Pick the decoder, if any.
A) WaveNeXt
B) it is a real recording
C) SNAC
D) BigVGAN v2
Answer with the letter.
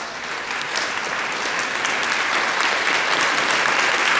B